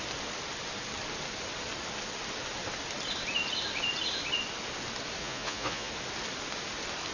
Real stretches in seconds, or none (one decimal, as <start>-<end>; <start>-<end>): 0.0-5.2; 5.9-7.1